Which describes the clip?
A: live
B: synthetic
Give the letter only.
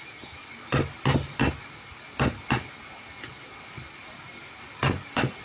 A